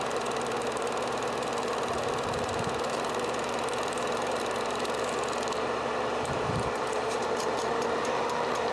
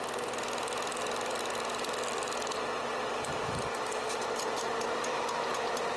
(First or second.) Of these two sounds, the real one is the second